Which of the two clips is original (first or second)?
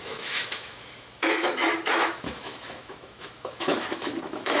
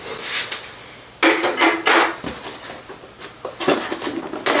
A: second